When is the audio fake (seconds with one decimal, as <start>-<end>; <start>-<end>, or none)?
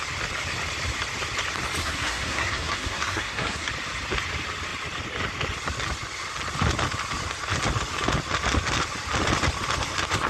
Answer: 1.8-3.7